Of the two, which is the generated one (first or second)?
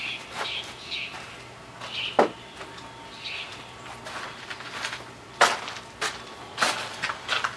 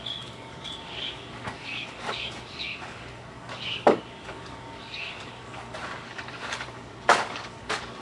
second